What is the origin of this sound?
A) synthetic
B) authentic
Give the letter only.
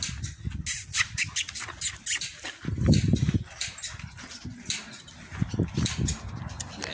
B